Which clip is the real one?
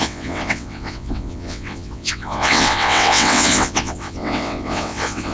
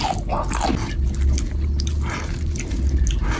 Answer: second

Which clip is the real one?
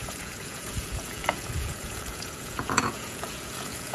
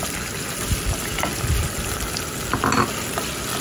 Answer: second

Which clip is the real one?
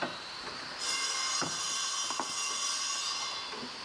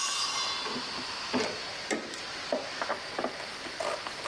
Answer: second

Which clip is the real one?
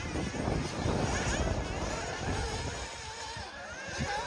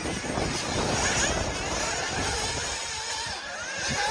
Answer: first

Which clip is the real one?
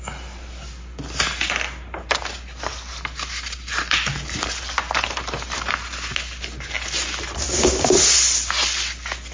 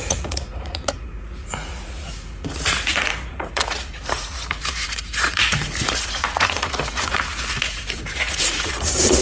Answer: first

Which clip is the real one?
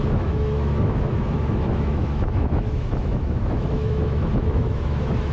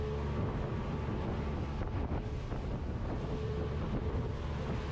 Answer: second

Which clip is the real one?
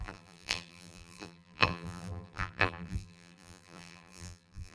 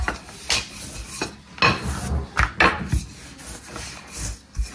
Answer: second